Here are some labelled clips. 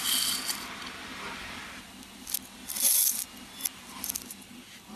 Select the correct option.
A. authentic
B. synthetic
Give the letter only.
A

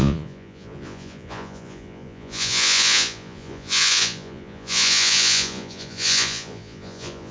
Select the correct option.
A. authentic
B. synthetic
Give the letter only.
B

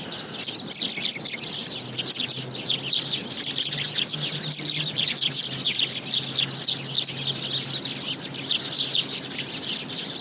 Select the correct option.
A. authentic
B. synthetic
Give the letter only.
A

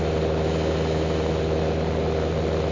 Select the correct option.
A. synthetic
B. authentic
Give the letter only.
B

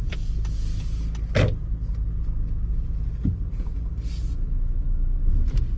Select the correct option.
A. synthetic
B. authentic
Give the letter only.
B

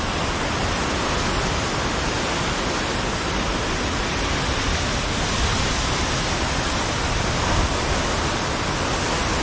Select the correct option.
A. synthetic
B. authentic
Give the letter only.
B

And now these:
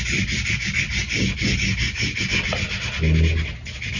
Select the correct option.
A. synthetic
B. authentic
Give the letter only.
B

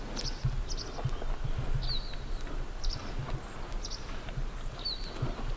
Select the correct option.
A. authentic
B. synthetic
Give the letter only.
A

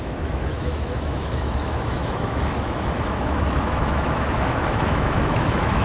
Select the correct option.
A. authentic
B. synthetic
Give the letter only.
B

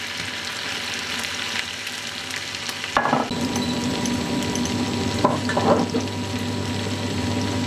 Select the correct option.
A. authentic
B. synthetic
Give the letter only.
A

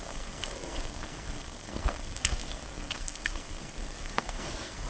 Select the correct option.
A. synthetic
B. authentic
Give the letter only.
A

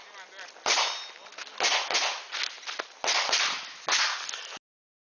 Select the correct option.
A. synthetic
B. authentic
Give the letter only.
B